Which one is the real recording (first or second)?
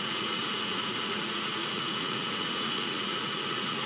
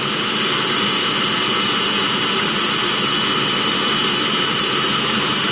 second